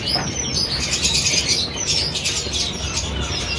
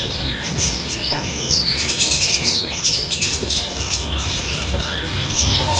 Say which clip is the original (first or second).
first